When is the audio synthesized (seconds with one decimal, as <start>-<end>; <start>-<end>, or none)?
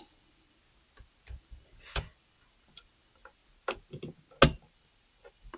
0.0-0.6; 1.4-3.4; 4.7-5.6